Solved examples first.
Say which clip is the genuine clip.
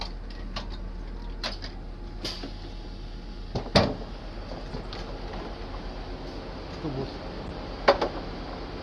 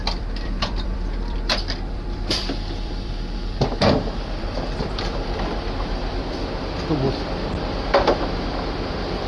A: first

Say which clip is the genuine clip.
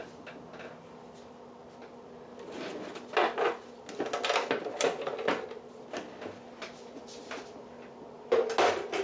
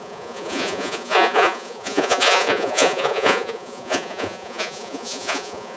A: first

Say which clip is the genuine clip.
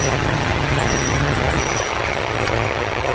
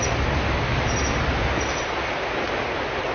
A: second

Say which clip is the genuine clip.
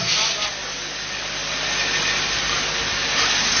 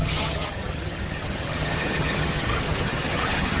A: first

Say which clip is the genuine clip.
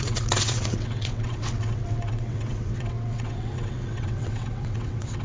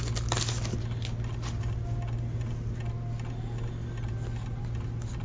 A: second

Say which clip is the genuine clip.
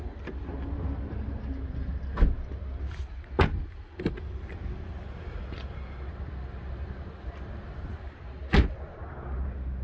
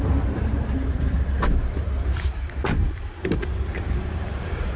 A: first